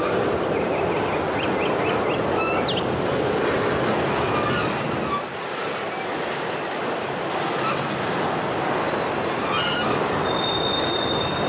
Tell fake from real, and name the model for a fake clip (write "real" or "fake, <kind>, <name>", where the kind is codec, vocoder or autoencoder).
real